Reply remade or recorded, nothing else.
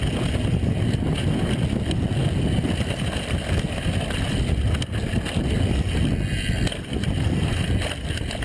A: recorded